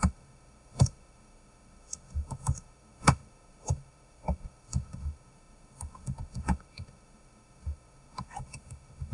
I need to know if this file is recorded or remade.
remade